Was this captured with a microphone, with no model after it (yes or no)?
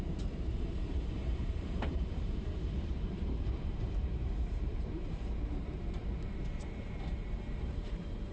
no